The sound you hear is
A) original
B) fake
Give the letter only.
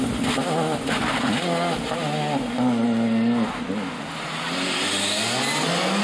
A